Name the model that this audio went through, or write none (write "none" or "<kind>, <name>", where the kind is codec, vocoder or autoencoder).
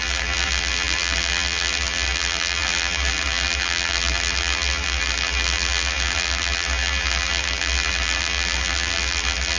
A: vocoder, BigVGAN v2